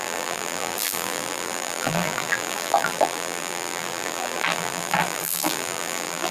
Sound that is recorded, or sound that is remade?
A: remade